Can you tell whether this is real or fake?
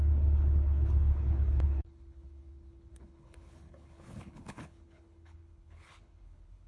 fake